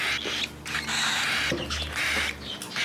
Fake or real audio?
real